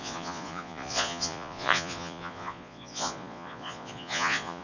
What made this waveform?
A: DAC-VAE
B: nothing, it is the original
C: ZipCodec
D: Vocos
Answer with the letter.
D